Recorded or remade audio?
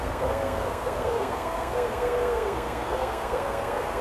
remade